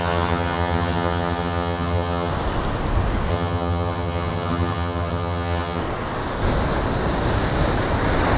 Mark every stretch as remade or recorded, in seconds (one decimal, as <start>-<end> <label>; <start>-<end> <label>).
0.0-2.3 remade; 2.3-3.3 recorded; 3.3-5.8 remade; 5.8-8.4 recorded